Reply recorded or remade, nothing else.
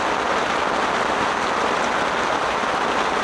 recorded